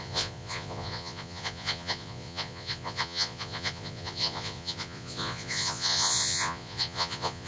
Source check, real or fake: fake